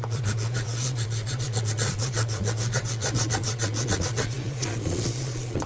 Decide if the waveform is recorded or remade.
remade